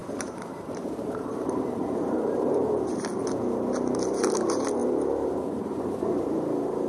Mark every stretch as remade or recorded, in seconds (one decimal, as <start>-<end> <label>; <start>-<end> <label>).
0.0-2.7 remade; 2.7-4.8 recorded; 4.8-6.9 remade